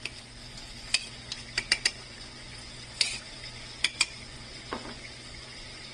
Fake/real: fake